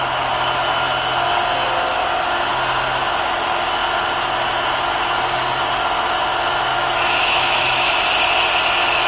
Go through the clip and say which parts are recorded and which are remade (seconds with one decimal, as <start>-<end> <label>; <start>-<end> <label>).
0.0-6.7 recorded; 6.7-7.9 remade; 7.9-9.1 recorded